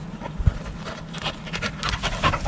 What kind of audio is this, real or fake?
real